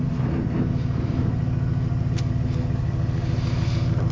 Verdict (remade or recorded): recorded